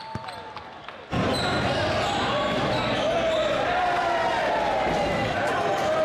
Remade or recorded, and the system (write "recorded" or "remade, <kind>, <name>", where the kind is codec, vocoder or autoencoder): recorded